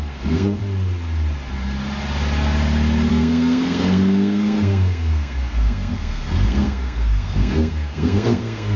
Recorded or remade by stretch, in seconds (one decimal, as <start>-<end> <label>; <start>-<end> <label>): 0.0-0.6 remade; 0.6-3.1 recorded; 3.1-8.8 remade